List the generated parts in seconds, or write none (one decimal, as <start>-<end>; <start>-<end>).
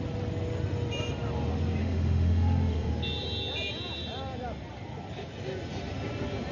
1.8-2.9